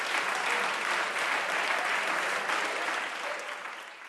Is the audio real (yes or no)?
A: yes